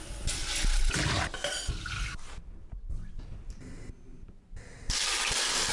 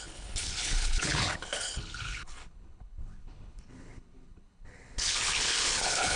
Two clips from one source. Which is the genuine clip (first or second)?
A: first